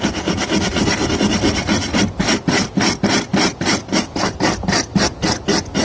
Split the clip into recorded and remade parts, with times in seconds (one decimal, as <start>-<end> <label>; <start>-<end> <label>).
0.0-5.8 recorded